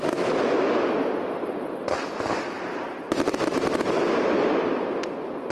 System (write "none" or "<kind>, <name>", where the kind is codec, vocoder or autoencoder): none